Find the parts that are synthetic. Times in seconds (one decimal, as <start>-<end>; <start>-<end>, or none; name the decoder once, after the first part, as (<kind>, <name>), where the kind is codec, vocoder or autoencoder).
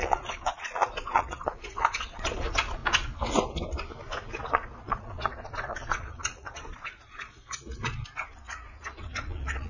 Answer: 0.0-2.8 (vocoder, Vocos); 4.5-8.0; 8.8-9.7